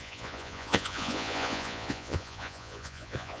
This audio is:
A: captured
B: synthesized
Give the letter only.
B